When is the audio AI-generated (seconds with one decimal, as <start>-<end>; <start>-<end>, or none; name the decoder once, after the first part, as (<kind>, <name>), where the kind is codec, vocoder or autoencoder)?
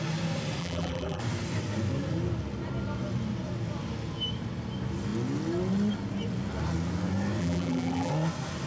0.6-1.2 (vocoder, BigVGAN v2); 7.4-8.1